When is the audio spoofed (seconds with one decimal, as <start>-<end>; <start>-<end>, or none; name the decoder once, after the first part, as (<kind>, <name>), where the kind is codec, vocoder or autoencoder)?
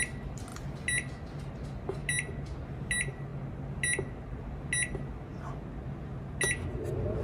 none